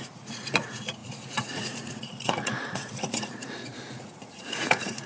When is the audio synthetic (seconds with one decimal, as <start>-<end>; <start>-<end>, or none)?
0.0-5.1